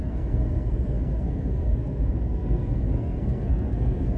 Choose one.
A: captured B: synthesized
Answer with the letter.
B